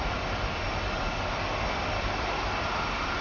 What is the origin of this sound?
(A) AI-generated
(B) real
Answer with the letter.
B